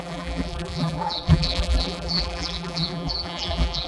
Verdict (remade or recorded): remade